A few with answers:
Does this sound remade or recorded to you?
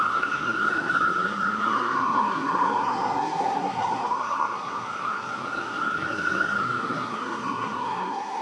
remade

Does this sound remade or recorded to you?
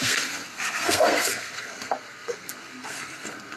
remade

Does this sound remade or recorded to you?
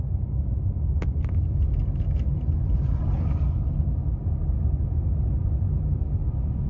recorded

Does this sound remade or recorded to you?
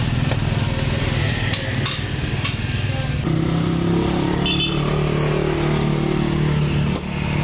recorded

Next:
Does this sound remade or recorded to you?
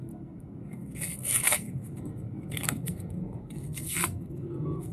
remade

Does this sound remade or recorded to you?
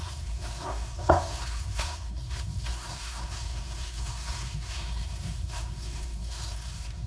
remade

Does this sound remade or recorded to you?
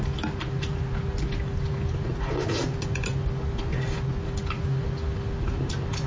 recorded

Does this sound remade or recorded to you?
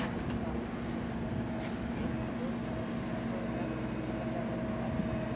recorded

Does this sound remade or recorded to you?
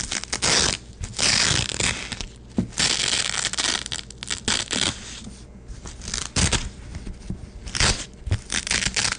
recorded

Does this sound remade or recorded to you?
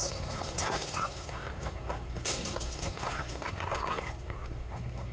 remade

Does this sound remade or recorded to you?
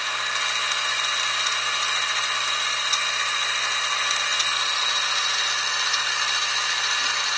recorded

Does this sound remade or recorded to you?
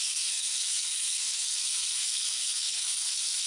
remade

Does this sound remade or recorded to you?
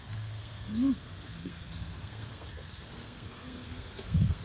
remade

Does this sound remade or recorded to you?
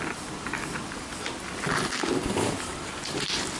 recorded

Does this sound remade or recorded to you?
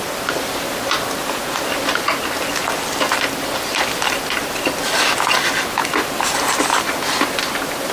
recorded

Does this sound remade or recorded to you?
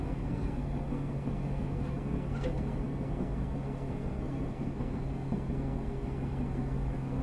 remade